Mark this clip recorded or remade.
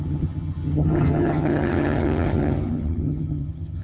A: remade